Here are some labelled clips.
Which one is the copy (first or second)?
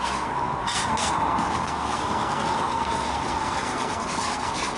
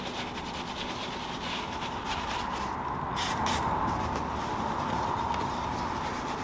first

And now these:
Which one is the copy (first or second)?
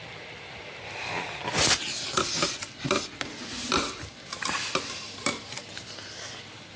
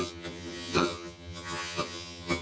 second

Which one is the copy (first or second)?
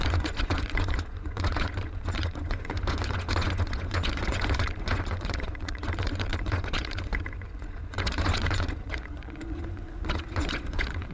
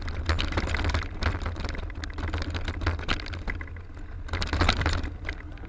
first